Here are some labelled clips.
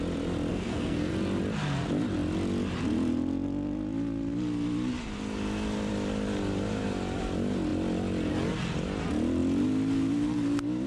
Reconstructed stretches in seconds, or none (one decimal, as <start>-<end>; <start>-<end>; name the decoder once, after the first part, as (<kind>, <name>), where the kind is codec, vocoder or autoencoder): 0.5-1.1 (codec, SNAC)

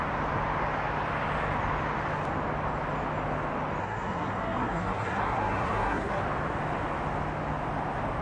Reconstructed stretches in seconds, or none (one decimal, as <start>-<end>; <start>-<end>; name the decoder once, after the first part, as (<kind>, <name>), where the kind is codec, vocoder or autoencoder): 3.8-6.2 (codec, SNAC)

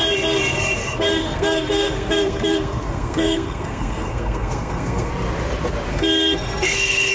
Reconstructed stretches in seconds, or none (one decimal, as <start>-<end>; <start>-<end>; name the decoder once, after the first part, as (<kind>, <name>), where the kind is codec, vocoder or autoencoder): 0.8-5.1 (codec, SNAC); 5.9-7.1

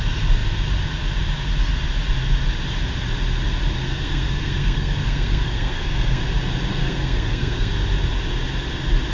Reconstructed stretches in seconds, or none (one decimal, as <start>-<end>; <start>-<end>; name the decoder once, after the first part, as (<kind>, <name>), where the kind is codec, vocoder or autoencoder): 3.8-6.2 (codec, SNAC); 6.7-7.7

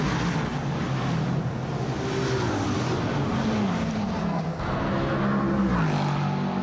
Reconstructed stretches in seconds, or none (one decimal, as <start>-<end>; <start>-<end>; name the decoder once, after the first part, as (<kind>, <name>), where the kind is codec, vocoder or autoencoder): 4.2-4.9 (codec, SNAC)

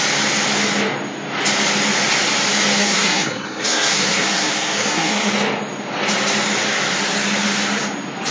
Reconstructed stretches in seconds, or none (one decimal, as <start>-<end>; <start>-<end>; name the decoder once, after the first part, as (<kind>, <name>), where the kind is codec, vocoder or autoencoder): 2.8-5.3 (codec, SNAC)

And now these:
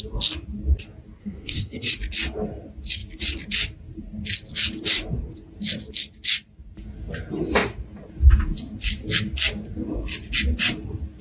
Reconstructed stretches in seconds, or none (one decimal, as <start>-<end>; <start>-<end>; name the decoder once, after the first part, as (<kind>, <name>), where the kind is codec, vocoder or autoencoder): 1.2-1.9 (codec, SNAC)